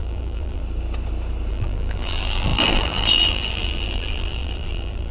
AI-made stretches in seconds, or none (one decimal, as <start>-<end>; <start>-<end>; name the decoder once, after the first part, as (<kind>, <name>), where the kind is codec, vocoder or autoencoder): 0.0-0.6 (vocoder, BigVGAN v2); 1.5-5.1